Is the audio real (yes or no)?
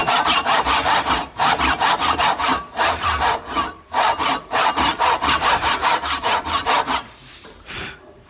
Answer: no